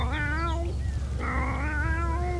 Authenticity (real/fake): real